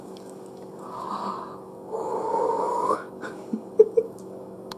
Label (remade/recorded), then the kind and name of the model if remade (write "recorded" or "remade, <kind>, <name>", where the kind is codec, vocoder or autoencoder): remade, codec, DAC